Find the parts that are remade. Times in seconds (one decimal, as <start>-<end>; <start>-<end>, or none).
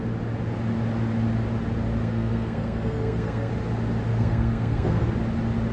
2.0-3.5; 4.1-5.1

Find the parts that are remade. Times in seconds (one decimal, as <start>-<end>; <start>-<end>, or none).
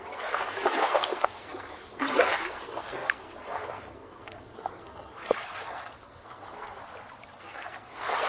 0.0-6.8; 7.4-8.3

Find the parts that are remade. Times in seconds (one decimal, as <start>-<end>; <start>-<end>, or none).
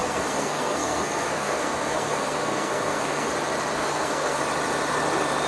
0.0-3.3; 3.7-4.4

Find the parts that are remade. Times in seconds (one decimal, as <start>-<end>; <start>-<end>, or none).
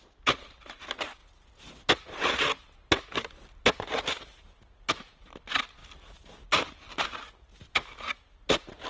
none